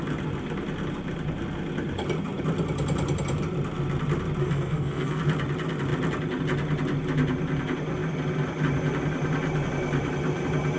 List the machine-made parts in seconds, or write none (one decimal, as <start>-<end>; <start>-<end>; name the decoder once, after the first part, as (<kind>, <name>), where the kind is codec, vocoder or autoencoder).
4.4-5.2 (codec, SNAC)